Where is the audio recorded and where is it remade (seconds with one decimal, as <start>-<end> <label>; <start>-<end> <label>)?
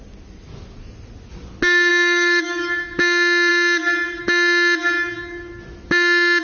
0.0-1.9 recorded; 1.9-2.8 remade; 2.8-6.4 recorded